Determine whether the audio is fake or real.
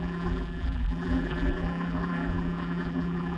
fake